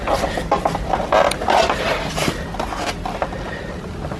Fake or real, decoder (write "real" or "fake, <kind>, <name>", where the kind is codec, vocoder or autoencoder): real